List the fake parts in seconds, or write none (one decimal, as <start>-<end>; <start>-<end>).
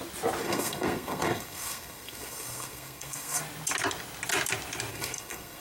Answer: 0.4-3.4; 4.9-5.6